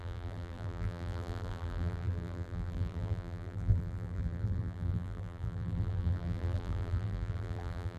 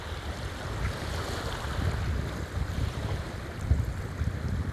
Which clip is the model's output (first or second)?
first